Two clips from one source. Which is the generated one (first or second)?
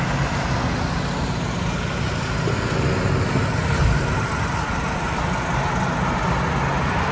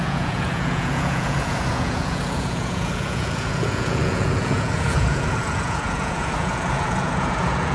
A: second